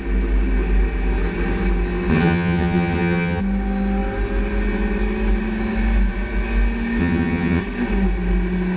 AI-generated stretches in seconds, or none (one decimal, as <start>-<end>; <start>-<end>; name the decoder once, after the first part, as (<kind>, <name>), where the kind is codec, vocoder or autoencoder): 2.1-3.4 (vocoder, HiFi-GAN); 7.0-7.6